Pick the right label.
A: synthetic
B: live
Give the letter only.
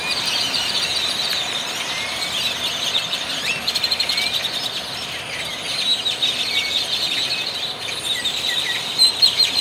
B